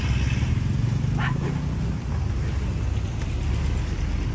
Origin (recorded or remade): recorded